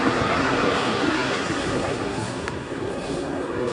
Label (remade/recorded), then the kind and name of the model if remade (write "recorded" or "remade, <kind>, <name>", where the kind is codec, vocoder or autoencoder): remade, codec, SNAC